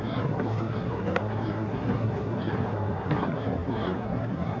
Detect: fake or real fake